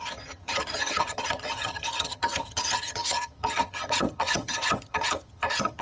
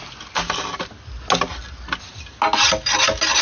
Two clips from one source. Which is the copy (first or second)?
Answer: first